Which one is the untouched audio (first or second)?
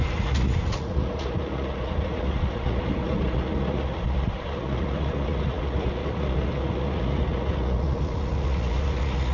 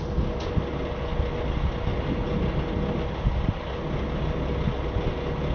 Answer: second